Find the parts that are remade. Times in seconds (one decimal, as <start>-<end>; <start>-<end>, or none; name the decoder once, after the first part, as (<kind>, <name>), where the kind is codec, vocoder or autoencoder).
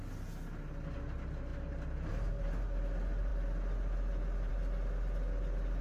1.5-2.3 (vocoder, BigVGAN v2)